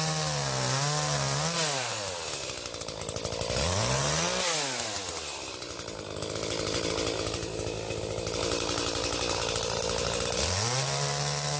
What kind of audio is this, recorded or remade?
recorded